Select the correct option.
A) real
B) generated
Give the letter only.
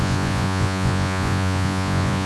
B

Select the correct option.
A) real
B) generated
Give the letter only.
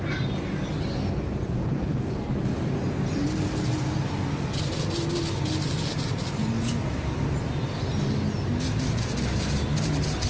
A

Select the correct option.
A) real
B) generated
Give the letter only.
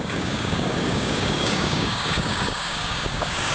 B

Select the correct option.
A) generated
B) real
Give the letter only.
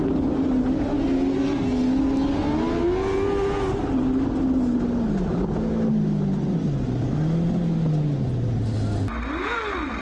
B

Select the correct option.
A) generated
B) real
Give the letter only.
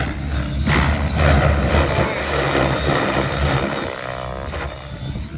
B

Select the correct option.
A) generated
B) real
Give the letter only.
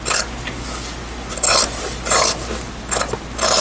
B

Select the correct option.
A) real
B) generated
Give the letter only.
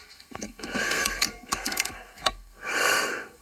B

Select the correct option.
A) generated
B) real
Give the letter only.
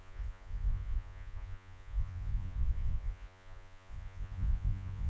A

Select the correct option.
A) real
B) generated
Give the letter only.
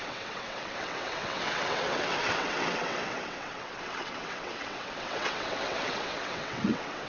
B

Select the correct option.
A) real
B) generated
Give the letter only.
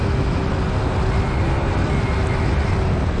A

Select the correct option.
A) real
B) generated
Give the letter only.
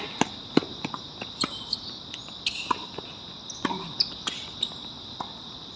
A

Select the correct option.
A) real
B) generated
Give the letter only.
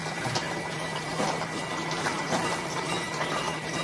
B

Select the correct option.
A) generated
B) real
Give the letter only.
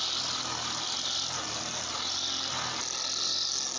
B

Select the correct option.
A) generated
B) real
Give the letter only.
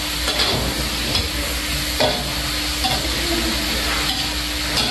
B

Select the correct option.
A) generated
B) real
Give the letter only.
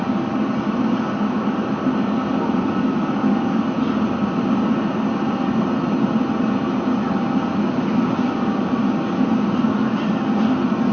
B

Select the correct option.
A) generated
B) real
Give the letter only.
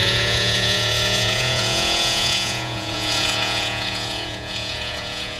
A